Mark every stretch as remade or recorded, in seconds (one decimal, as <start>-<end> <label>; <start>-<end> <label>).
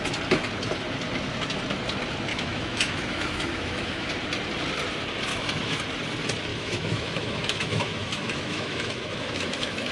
0.0-2.3 recorded; 2.3-4.1 remade; 4.1-5.3 recorded; 5.3-5.8 remade; 5.8-6.5 recorded; 6.5-9.9 remade